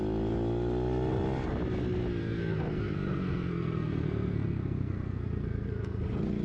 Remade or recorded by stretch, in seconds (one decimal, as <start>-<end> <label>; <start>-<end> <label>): 0.0-2.2 recorded; 2.2-6.0 remade; 6.0-6.4 recorded